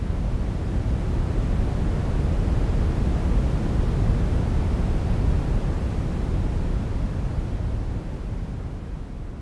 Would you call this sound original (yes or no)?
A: yes